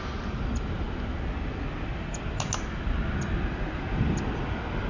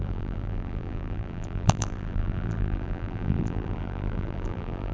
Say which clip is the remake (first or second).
second